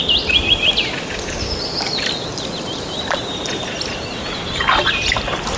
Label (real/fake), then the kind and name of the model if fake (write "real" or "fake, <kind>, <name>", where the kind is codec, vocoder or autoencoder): real